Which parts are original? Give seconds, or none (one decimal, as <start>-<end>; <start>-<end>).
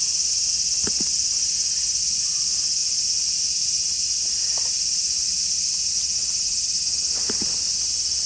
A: 0.0-8.3